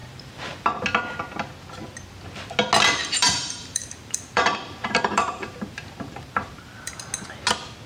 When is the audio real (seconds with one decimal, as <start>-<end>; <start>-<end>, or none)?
0.8-3.0; 6.9-7.9